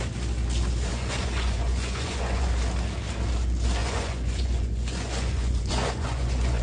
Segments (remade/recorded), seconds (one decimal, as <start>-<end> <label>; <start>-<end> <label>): 0.0-0.9 recorded; 0.9-2.5 remade; 2.5-3.8 recorded; 3.8-6.6 remade